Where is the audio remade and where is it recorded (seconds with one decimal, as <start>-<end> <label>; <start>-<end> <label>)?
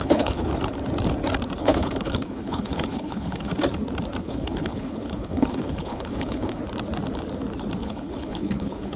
0.0-0.5 remade; 0.5-1.6 recorded; 1.6-3.5 remade; 3.5-4.2 recorded; 4.2-6.6 remade; 6.6-7.8 recorded; 7.8-9.0 remade